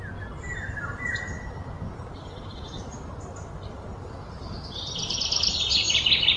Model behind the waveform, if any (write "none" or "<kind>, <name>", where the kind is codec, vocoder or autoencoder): none